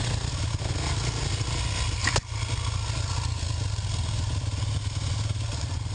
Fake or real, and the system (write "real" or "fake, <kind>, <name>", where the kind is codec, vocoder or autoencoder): real